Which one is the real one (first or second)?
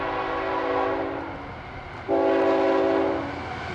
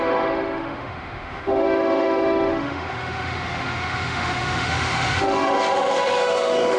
first